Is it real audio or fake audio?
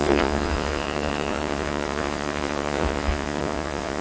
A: fake